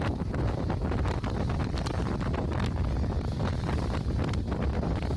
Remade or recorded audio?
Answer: recorded